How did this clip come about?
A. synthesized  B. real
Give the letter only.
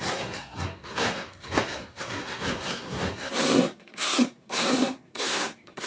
A